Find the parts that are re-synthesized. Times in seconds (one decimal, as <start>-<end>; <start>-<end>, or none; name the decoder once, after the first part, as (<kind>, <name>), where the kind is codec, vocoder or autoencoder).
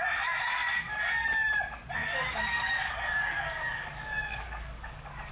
2.0-5.3 (codec, DAC)